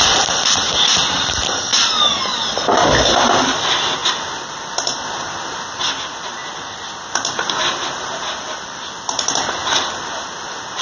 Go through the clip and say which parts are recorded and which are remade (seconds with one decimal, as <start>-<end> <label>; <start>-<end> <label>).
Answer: 0.0-1.7 remade; 1.7-3.4 recorded; 3.4-9.6 remade; 9.6-10.4 recorded; 10.4-10.8 remade